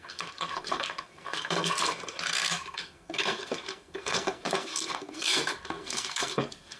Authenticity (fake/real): fake